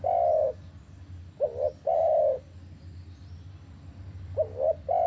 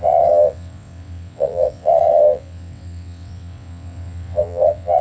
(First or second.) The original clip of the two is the first